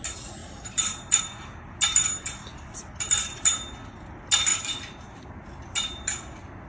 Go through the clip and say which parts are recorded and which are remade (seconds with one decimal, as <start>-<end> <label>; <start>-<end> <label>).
0.0-0.4 recorded; 0.4-1.2 remade; 1.2-4.5 recorded; 4.5-5.3 remade; 5.3-6.7 recorded